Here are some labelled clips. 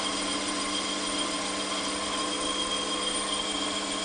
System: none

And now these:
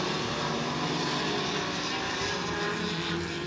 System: vocoder, BigVGAN v2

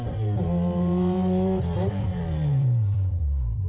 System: vocoder, BigVGAN v2